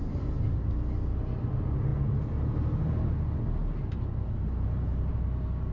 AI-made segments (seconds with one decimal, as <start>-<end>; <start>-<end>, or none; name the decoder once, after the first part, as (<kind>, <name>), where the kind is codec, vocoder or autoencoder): none